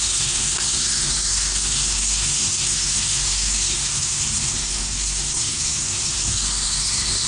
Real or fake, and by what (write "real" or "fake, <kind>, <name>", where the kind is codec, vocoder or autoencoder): fake, codec, SNAC